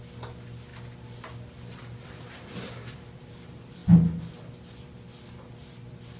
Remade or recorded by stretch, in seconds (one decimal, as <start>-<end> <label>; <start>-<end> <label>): 0.0-6.2 recorded